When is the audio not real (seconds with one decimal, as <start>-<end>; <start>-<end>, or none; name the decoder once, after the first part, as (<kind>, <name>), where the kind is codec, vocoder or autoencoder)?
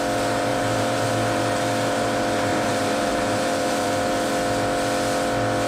0.5-1.1 (vocoder, BigVGAN v2); 2.5-4.3